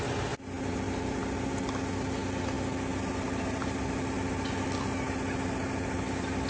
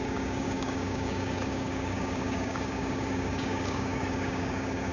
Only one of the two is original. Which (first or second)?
first